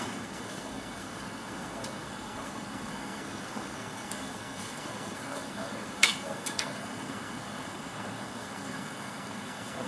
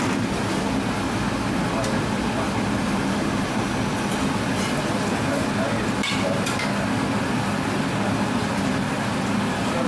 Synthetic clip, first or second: first